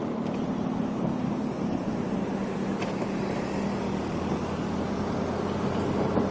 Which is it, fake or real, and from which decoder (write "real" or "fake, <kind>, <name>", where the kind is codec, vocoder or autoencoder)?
real